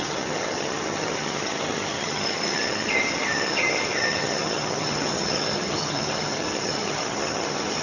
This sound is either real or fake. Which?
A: fake